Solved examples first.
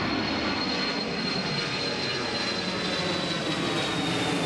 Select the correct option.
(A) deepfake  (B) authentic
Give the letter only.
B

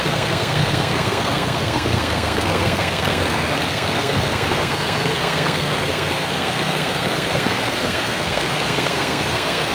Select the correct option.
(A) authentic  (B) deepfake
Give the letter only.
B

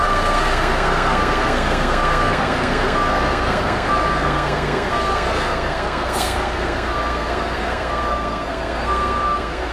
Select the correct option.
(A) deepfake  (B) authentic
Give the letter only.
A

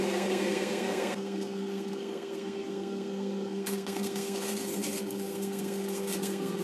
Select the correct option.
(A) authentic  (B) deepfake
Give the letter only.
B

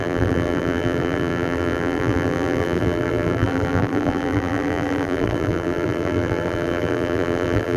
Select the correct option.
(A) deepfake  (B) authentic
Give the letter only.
A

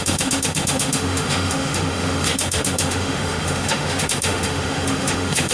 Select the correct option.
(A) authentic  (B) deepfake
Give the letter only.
B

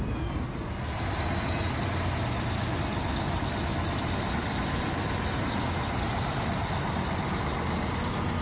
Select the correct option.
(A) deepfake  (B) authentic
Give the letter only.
B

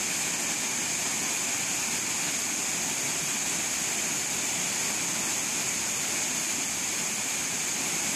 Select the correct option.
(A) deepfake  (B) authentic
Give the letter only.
B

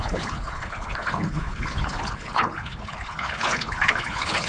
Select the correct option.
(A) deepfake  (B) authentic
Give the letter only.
A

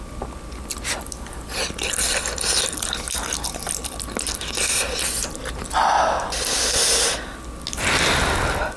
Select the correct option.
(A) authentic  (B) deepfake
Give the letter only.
A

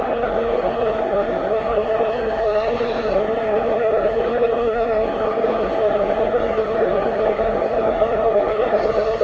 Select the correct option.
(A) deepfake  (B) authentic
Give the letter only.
A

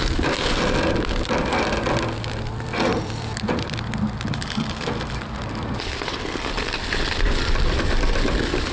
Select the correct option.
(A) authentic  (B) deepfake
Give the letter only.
B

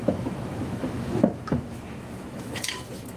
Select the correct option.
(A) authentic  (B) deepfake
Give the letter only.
B